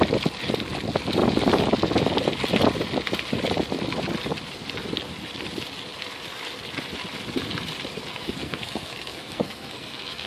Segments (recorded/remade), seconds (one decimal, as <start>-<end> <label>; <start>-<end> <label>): 0.0-8.1 recorded; 8.1-10.3 remade